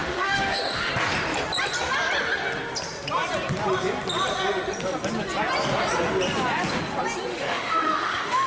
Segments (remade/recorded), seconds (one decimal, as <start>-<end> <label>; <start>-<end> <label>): 0.0-0.9 remade; 0.9-7.3 recorded; 7.3-8.5 remade